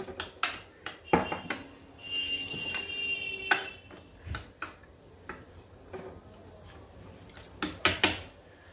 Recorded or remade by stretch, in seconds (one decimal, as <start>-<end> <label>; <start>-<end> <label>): 0.0-2.0 recorded; 2.0-2.7 remade; 2.7-8.7 recorded